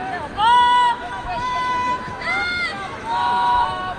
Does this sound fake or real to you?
fake